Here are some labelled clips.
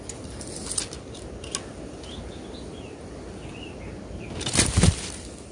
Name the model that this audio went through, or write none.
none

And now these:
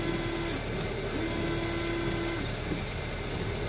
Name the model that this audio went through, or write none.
none